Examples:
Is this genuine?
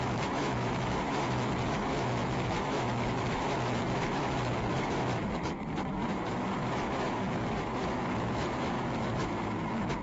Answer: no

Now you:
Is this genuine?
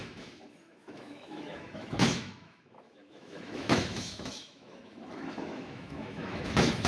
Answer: no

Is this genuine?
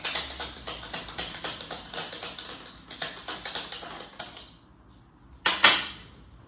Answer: yes